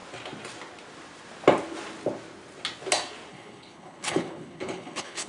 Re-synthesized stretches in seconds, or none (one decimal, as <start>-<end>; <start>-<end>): 3.3-5.3